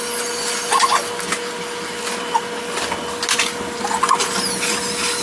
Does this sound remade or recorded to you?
recorded